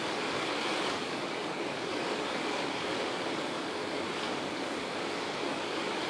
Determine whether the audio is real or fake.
fake